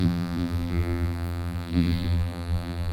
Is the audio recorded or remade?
remade